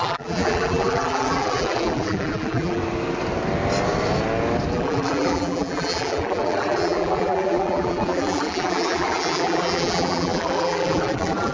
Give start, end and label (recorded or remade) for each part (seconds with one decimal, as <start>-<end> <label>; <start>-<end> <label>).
0.0-2.8 remade; 2.8-4.7 recorded; 4.7-11.5 remade